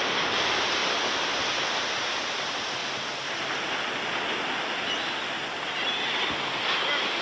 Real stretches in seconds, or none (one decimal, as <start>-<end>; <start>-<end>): 0.0-7.2